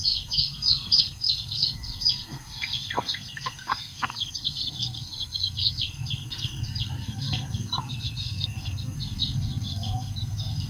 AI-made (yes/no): yes